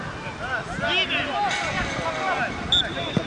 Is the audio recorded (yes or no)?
yes